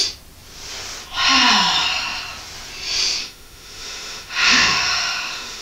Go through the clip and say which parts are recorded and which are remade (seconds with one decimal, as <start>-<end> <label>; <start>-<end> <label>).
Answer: 0.0-3.2 recorded; 3.2-5.6 remade